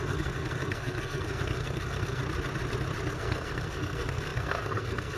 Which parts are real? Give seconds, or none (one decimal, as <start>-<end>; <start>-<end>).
2.2-3.1